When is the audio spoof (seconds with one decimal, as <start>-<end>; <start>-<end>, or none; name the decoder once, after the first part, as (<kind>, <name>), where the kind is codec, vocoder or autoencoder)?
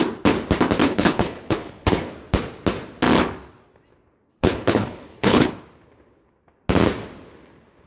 0.8-2.1 (codec, HILCodec); 4.3-5.5